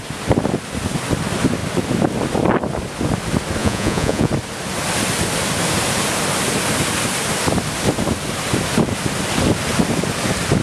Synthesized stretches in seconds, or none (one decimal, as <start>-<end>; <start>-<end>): 3.6-4.3